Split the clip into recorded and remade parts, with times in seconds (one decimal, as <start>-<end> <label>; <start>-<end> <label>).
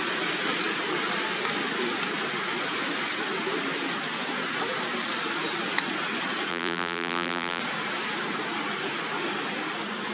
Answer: 0.0-6.5 recorded; 6.5-7.6 remade; 7.6-10.1 recorded